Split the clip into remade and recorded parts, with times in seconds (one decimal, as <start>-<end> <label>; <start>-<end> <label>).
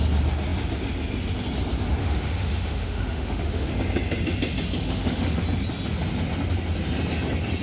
0.0-2.0 recorded; 2.0-3.7 remade; 3.7-4.8 recorded; 4.8-5.4 remade; 5.4-7.6 recorded